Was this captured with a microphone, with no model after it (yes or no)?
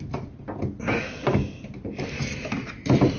yes